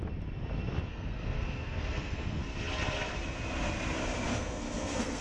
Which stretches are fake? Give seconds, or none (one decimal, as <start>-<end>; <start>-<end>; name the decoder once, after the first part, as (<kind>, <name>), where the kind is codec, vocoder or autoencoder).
0.9-2.4 (codec, SNAC); 4.3-5.2